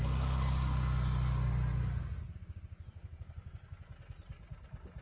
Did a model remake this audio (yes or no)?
no